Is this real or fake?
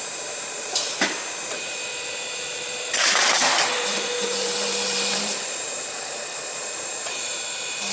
fake